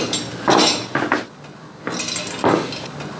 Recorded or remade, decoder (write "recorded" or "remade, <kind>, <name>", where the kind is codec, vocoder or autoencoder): recorded